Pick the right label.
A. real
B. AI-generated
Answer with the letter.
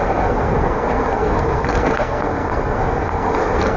B